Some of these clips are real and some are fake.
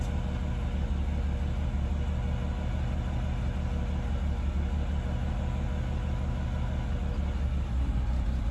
real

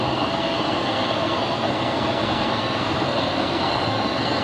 fake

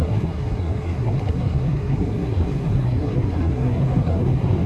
fake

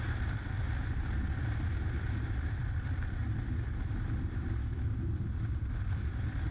real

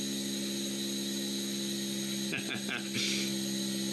real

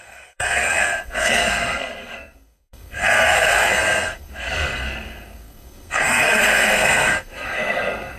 fake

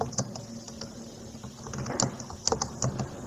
real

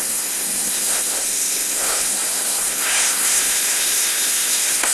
fake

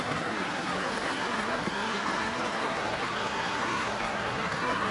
fake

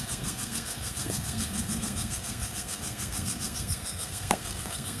fake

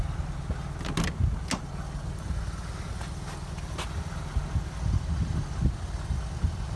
real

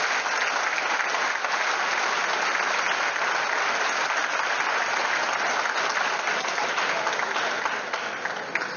real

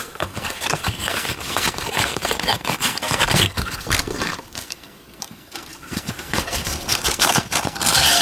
fake